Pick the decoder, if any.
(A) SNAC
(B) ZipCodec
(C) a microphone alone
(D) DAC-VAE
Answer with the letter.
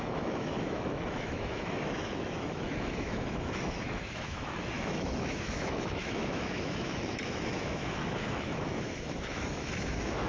D